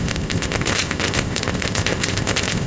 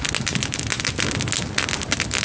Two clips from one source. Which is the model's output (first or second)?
first